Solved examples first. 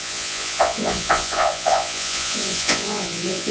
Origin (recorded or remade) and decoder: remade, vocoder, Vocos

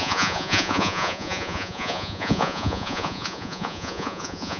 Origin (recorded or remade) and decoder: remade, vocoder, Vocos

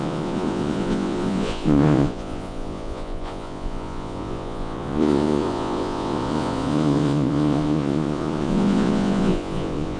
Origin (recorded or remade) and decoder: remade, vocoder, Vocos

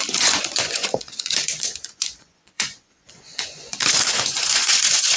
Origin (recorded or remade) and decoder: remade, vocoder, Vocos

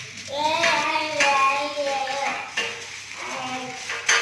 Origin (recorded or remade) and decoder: recorded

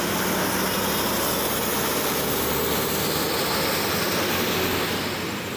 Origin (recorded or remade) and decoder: recorded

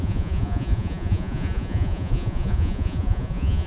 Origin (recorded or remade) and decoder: remade, vocoder, Vocos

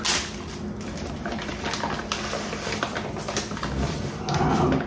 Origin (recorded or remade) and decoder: recorded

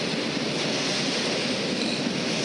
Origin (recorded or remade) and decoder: recorded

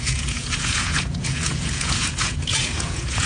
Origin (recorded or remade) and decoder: remade, vocoder, Vocos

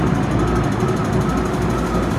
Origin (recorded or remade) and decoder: recorded